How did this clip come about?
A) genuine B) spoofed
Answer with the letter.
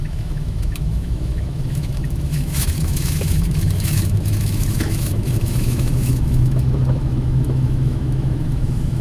B